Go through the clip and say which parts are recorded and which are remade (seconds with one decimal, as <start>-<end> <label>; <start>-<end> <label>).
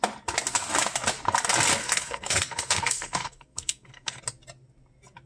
0.0-1.8 recorded; 1.8-4.2 remade; 4.2-5.3 recorded